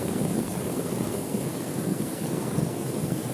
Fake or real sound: fake